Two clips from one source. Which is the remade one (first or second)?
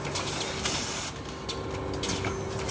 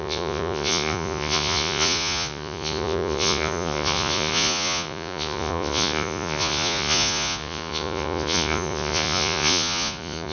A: second